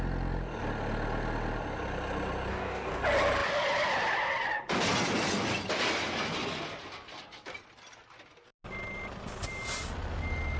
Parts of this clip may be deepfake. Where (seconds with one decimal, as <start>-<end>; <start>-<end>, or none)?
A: 2.5-3.0

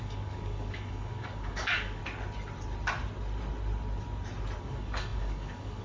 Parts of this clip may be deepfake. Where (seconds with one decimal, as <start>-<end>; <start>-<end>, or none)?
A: 0.0-2.0; 4.6-5.8

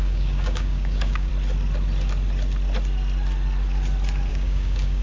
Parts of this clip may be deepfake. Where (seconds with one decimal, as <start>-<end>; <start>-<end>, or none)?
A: 0.0-1.3; 4.3-5.0

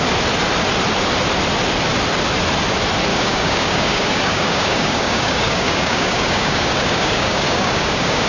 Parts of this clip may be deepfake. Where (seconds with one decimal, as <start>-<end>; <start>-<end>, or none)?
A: 3.1-8.3

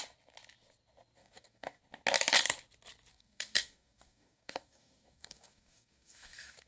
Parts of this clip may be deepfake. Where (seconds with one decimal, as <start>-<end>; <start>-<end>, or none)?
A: 1.2-1.8; 3.1-6.7